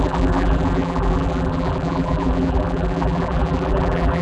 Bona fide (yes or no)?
no